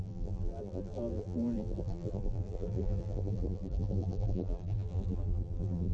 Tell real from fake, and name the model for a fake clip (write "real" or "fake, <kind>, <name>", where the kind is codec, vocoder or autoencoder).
fake, vocoder, BigVGAN v2